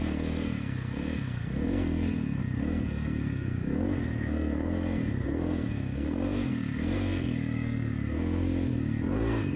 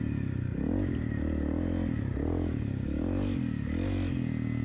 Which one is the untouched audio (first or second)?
second